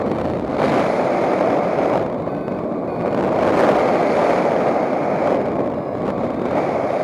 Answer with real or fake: real